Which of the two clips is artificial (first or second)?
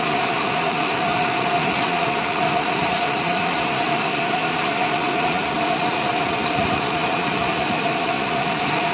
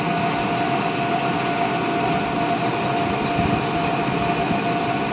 first